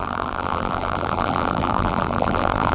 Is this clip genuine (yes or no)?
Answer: no